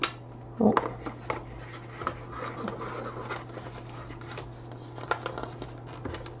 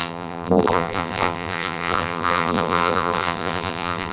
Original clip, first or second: first